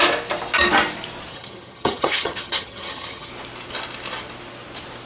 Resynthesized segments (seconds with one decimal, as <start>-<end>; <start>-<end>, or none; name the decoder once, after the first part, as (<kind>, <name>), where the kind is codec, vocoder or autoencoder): 1.3-3.3 (vocoder, HiFi-GAN)